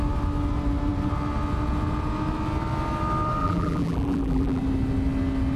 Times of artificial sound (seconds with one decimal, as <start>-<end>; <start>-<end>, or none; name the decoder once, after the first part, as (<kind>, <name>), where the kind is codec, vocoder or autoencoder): 3.4-4.6 (vocoder, BigVGAN v2)